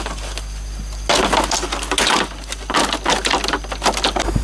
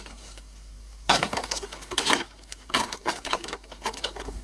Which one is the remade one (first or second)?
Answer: second